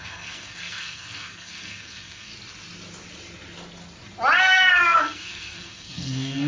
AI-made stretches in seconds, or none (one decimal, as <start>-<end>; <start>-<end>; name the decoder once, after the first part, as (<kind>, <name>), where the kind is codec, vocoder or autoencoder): 0.0-2.3 (codec, SNAC); 4.4-6.5